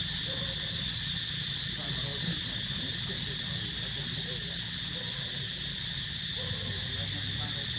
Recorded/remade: recorded